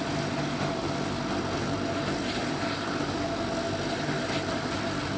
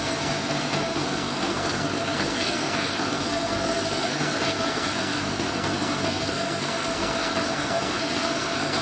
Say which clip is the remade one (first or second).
second